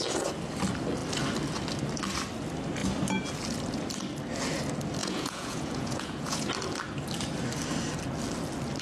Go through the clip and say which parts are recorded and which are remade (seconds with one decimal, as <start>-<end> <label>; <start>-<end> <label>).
0.0-5.0 recorded; 5.0-6.5 remade; 6.5-8.8 recorded